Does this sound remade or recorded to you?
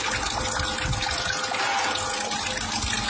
recorded